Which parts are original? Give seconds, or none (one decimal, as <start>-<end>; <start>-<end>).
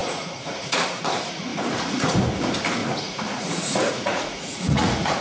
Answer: 1.0-1.5; 2.1-2.8